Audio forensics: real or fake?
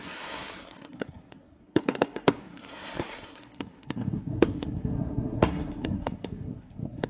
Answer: fake